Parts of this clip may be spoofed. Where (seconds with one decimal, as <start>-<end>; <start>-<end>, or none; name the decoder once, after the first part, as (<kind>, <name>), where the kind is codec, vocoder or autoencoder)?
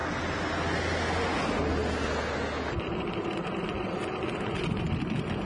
2.7-5.4 (vocoder, BigVGAN v2)